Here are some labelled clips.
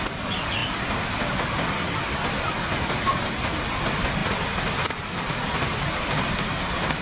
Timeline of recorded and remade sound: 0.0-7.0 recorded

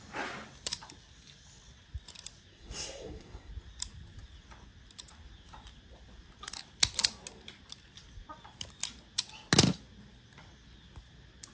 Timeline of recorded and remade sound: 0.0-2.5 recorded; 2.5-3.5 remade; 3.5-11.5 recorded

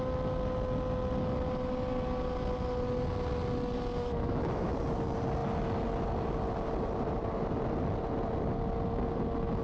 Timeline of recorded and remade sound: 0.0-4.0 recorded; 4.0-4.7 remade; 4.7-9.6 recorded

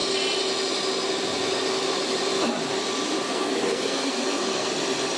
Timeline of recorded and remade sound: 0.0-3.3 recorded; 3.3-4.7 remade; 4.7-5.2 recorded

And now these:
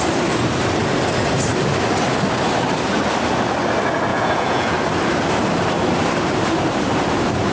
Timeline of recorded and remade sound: 0.0-4.1 recorded; 4.1-4.7 remade; 4.7-7.5 recorded

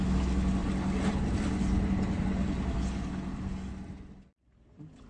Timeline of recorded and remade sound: 0.0-5.1 recorded